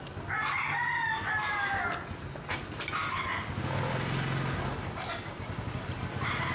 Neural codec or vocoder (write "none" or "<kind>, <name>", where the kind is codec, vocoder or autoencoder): none